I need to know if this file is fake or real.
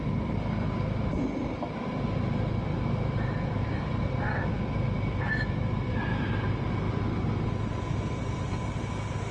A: real